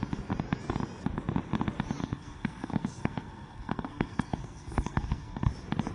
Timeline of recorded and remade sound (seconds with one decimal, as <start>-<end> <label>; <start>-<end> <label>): 0.0-2.0 recorded; 2.0-5.5 remade; 5.5-5.9 recorded